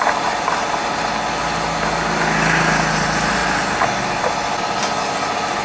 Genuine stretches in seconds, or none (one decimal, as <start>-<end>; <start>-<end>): 0.0-5.6